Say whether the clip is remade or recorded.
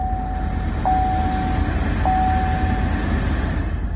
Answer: recorded